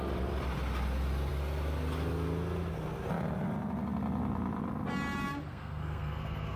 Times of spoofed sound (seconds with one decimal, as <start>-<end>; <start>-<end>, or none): 5.5-6.6